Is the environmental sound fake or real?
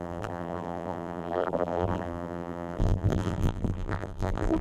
fake